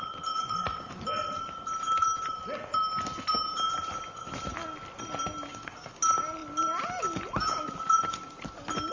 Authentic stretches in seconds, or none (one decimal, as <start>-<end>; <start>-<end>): 0.0-5.5; 6.0-8.9